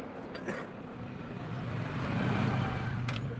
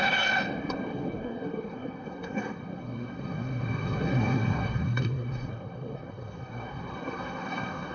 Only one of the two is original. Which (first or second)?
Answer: first